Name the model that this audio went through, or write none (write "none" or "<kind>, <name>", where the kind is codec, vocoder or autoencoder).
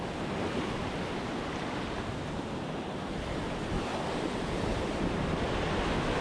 none